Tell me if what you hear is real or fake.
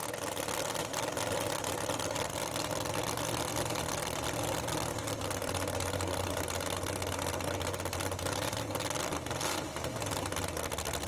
real